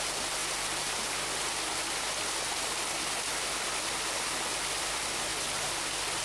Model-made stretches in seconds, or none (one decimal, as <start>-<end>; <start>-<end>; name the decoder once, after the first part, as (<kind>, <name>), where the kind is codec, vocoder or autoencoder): 0.0-0.4 (vocoder, BigVGAN v2); 4.1-5.3; 5.8-6.2